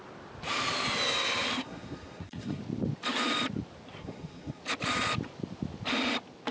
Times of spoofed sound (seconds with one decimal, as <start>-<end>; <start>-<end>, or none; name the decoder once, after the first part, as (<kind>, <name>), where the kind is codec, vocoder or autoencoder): 1.6-2.6 (codec, SNAC); 4.0-4.6